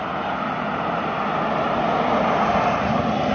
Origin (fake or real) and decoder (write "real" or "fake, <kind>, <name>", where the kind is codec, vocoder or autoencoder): real